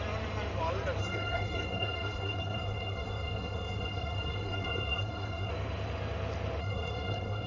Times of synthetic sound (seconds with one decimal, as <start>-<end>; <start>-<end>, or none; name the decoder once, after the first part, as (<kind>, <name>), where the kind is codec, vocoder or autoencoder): 1.0-5.5 (codec, SNAC); 6.6-7.5